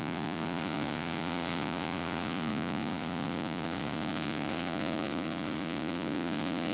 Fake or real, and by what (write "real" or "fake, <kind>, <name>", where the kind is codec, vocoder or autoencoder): fake, vocoder, Vocos